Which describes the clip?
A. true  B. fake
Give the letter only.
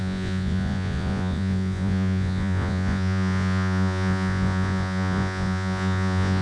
B